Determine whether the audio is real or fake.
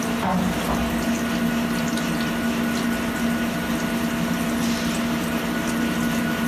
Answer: real